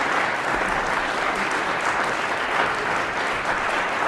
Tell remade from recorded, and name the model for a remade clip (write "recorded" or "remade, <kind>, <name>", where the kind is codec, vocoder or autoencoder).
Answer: recorded